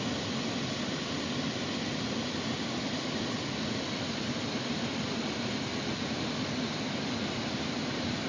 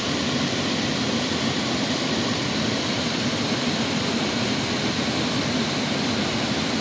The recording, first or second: first